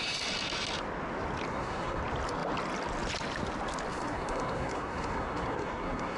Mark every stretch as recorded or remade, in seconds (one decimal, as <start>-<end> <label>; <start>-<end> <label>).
0.0-1.5 recorded; 1.5-2.0 remade; 2.0-3.9 recorded; 3.9-6.2 remade